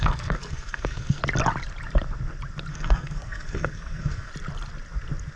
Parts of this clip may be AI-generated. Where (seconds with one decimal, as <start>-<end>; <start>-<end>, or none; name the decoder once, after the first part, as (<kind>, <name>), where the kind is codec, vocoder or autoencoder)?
0.0-1.2 (codec, SNAC); 2.7-4.3